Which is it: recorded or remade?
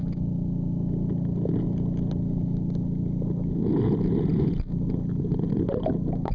recorded